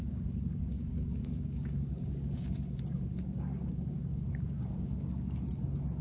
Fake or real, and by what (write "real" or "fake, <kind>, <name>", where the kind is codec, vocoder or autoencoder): fake, codec, DAC